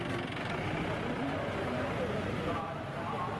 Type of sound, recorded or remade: recorded